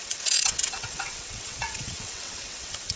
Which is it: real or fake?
fake